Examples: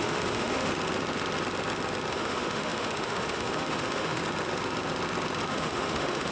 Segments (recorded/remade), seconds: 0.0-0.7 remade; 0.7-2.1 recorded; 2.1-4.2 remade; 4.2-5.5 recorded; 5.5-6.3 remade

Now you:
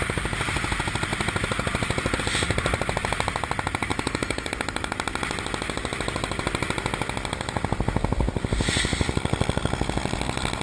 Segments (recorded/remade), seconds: 0.0-3.9 recorded; 3.9-4.5 remade; 4.5-10.6 recorded